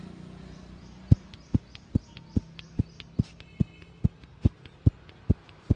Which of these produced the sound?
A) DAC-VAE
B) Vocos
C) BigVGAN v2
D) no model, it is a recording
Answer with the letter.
D